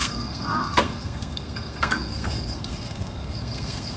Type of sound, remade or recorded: remade